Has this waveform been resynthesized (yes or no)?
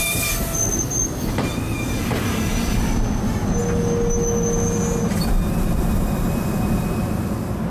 no